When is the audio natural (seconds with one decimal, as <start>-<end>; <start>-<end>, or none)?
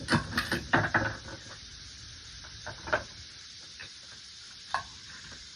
0.0-3.8; 4.8-5.6